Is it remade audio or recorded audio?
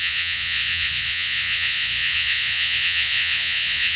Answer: remade